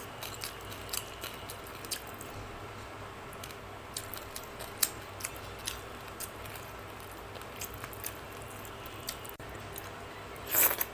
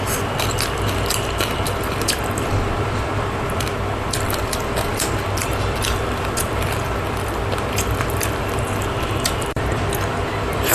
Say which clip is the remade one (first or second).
second